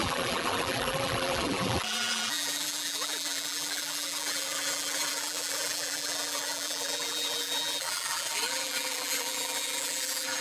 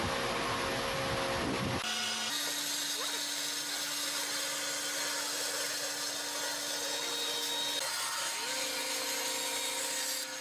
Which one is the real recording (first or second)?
second